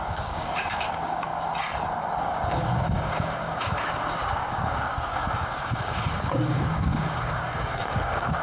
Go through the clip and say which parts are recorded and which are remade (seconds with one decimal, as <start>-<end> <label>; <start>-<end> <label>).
0.0-1.3 remade; 1.3-2.2 recorded; 2.2-8.4 remade